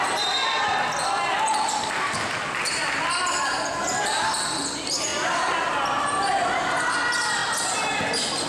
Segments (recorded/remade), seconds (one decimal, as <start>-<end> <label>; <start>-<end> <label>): 0.0-5.1 remade; 5.1-5.8 recorded; 5.8-7.4 remade; 7.4-8.5 recorded